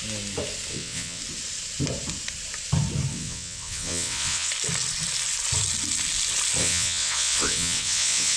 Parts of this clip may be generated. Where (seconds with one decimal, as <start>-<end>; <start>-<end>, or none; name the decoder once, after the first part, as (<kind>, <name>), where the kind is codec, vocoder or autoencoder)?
0.7-1.2 (vocoder, WaveNeXt); 3.1-4.5; 6.6-8.4